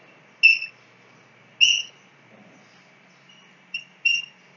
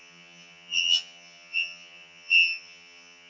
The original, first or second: first